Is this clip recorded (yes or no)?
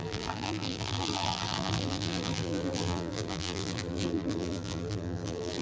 no